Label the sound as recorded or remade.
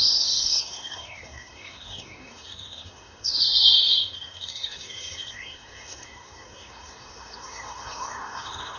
remade